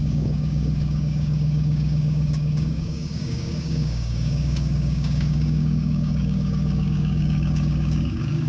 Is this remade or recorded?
remade